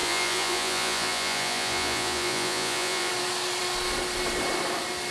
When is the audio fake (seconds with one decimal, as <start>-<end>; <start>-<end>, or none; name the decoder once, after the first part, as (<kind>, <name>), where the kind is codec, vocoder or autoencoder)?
0.0-3.1 (vocoder, Vocos)